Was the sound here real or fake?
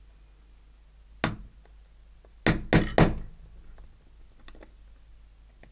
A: real